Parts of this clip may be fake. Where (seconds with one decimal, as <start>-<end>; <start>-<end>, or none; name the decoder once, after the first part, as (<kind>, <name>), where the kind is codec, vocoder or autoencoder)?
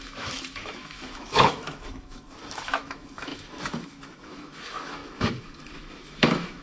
0.0-6.6 (autoencoder, DAC-VAE)